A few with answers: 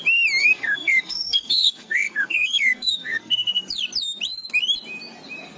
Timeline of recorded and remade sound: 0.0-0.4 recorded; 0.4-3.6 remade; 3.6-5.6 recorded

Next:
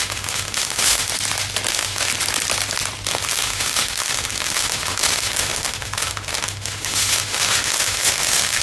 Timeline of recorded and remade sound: 0.0-1.1 remade; 1.1-1.7 recorded; 1.7-2.1 remade; 2.1-3.1 recorded; 3.1-8.6 remade